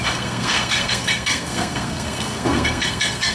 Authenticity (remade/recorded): remade